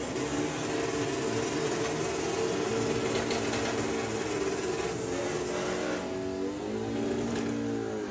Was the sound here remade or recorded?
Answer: recorded